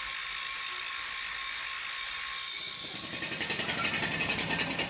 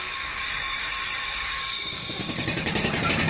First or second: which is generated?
second